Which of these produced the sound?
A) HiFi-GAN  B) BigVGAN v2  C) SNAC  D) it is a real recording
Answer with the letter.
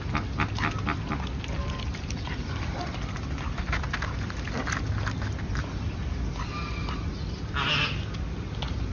D